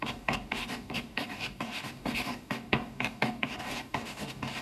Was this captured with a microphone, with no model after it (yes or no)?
no